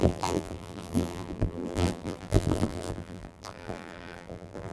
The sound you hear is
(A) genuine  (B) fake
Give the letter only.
B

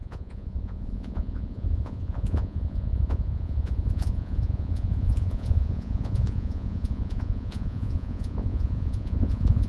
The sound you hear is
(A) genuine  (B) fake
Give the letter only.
B